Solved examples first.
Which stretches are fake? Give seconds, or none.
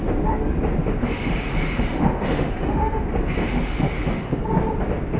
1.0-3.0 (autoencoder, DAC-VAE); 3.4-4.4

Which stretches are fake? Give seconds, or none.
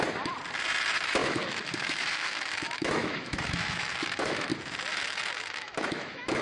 1.2-4.5 (autoencoder, DAC-VAE); 4.9-6.4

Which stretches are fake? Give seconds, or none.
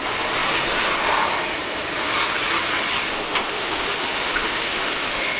3.1-5.4 (autoencoder, DAC-VAE)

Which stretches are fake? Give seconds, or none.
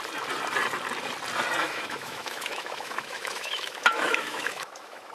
1.6-5.1 (autoencoder, DAC-VAE)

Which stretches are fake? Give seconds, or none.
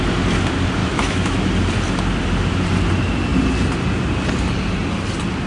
0.8-1.5 (autoencoder, DAC-VAE)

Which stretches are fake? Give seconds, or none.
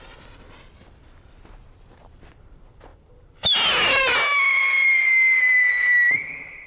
none